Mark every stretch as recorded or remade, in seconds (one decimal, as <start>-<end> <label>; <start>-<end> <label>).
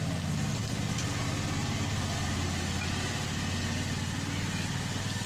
0.0-5.3 recorded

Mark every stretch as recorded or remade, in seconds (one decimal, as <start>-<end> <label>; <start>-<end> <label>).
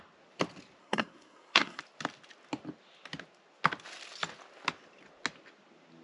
0.0-0.8 recorded; 0.8-1.8 remade; 1.8-6.0 recorded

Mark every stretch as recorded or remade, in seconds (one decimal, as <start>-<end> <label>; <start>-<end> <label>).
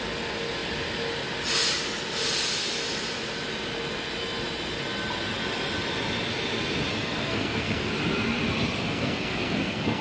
0.0-6.9 recorded; 6.9-7.9 remade; 7.9-8.8 recorded; 8.8-10.0 remade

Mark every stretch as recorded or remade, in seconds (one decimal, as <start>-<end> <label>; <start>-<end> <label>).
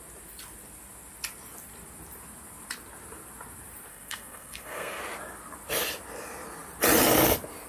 0.0-3.9 recorded; 3.9-5.0 remade; 5.0-7.7 recorded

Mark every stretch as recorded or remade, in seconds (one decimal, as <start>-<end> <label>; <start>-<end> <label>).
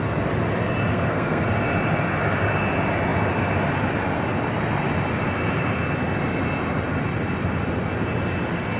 0.0-0.9 recorded; 0.9-1.4 remade; 1.4-8.8 recorded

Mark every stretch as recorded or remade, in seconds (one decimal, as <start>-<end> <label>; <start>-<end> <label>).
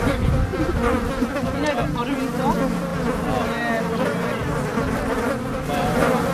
0.0-6.3 recorded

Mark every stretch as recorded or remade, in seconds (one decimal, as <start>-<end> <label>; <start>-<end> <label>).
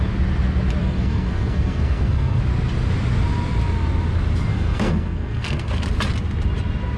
0.0-0.8 recorded; 0.8-2.4 remade; 2.4-4.5 recorded; 4.5-5.7 remade; 5.7-7.0 recorded